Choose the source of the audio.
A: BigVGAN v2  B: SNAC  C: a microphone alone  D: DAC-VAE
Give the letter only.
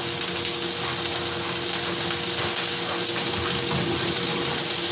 C